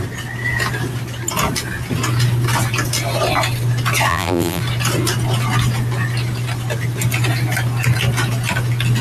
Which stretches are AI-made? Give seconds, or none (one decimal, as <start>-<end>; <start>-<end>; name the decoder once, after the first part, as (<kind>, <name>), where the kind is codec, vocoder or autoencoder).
4.1-4.6 (vocoder, BigVGAN v2)